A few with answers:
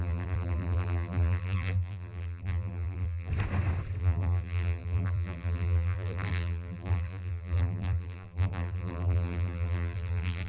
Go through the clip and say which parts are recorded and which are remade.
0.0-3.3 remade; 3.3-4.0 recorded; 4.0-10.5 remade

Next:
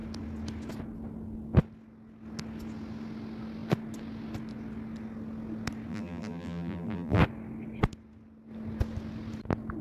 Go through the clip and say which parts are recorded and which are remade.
0.0-5.9 recorded; 5.9-7.2 remade; 7.2-9.8 recorded

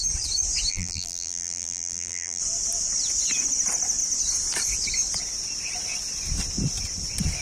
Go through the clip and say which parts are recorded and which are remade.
0.0-0.7 recorded; 0.7-2.4 remade; 2.4-7.4 recorded

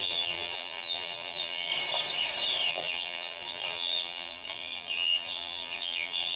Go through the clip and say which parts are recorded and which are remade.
0.0-1.7 remade; 1.7-2.7 recorded; 2.7-6.4 remade